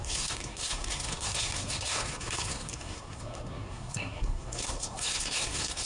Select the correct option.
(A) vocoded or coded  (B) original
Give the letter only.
A